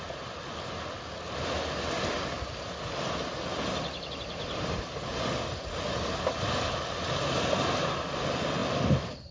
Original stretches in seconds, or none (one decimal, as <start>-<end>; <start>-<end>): 0.0-9.3